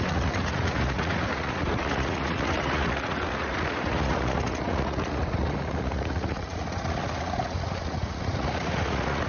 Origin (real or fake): fake